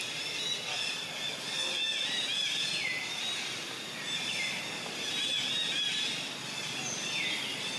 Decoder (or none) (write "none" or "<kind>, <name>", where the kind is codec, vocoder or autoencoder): none